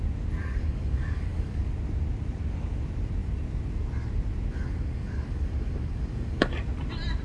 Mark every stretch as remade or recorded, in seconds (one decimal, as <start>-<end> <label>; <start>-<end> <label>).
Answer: 0.0-0.4 recorded; 0.4-1.6 remade; 1.6-4.5 recorded; 4.5-6.4 remade; 6.4-7.2 recorded